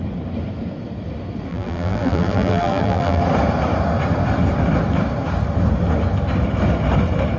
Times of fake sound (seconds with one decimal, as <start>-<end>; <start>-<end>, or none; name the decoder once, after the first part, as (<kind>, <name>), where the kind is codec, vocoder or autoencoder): 1.5-3.2 (vocoder, BigVGAN v2)